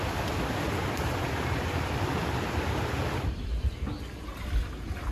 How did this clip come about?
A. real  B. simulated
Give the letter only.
A